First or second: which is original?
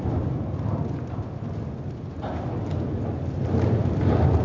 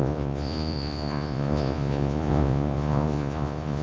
first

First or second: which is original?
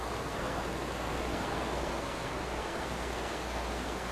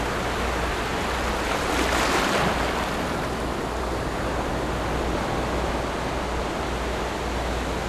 second